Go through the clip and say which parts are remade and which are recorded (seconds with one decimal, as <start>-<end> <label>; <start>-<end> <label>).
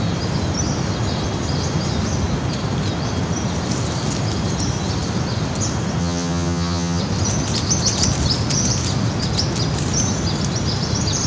0.0-6.0 recorded; 6.0-7.0 remade; 7.0-11.3 recorded